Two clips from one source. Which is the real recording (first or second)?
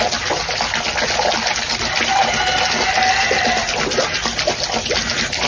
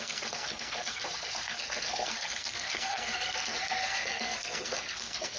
first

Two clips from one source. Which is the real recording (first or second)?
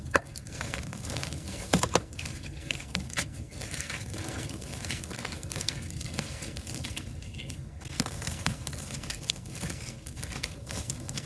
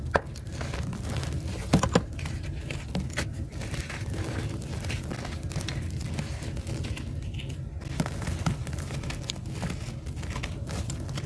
second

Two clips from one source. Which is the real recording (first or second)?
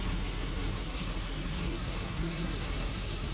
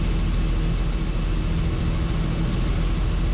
second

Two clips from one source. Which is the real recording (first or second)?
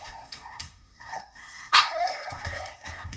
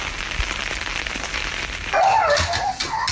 second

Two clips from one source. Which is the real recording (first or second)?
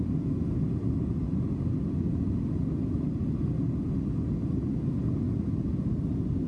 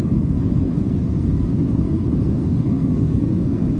first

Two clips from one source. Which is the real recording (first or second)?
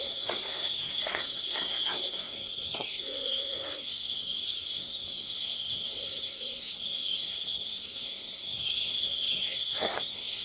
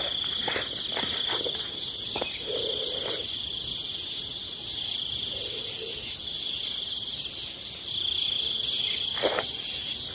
second